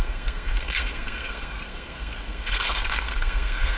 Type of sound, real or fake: fake